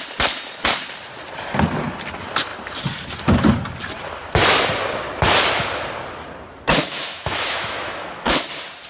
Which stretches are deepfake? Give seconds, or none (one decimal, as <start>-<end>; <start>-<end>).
6.8-8.5